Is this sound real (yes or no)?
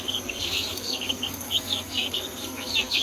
no